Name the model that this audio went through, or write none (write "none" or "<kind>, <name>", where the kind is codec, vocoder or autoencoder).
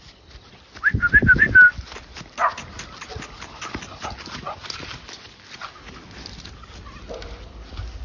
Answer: none